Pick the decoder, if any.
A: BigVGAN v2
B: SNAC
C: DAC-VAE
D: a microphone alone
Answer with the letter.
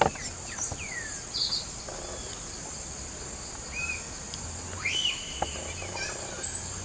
D